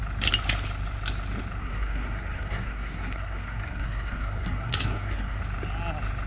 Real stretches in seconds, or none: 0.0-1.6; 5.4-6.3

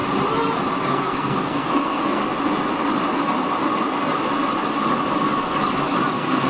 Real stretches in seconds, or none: 0.0-0.9; 2.2-6.1

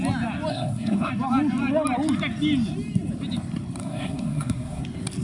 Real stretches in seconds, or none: 0.0-0.5; 1.1-3.8; 4.8-5.2